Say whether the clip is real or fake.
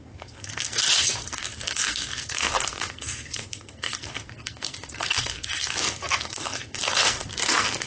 fake